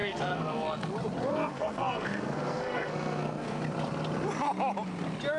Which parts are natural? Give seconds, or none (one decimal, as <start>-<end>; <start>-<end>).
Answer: 0.9-1.3; 3.6-5.4